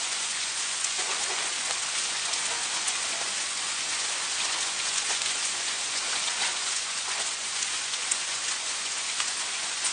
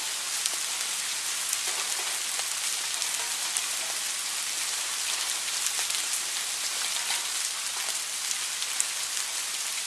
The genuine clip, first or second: second